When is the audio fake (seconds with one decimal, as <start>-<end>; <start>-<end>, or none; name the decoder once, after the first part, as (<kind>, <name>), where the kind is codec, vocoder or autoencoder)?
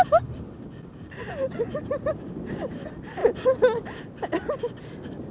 none